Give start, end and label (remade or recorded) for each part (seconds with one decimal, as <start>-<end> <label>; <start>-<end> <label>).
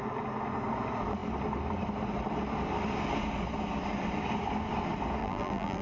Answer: 0.0-5.2 recorded; 5.2-5.8 remade